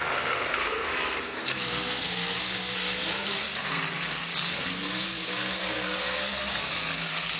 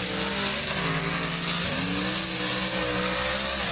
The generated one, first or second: first